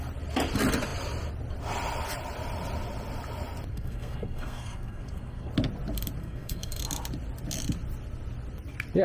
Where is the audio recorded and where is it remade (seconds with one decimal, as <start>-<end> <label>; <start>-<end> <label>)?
0.0-3.7 recorded; 3.7-5.5 remade; 5.5-6.2 recorded; 6.2-6.8 remade; 6.8-9.0 recorded